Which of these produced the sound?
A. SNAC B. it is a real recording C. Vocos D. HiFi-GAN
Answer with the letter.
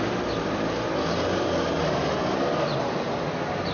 B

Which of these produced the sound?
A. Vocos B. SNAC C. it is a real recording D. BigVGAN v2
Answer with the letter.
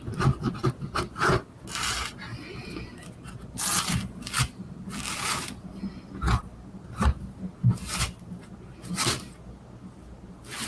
C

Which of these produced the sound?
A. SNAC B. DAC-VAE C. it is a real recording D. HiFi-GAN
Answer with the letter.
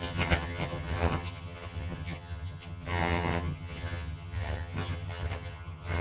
D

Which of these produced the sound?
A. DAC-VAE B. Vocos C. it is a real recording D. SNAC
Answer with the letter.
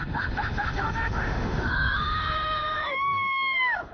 A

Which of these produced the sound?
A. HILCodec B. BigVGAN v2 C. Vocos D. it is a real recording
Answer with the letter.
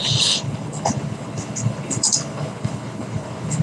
A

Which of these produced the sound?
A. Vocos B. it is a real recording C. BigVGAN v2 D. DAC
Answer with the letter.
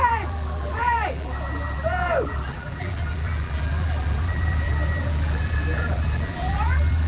C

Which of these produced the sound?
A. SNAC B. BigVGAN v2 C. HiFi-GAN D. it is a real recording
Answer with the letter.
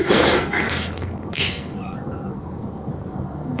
A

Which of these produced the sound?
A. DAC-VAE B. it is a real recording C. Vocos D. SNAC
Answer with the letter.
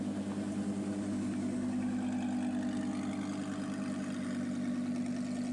B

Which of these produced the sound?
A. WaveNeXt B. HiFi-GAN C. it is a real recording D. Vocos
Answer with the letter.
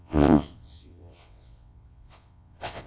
A